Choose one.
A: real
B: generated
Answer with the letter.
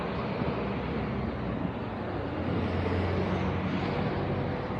A